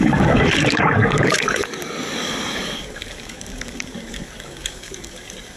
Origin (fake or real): fake